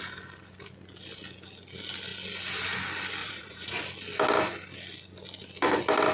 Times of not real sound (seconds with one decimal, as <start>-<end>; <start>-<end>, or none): 3.2-3.8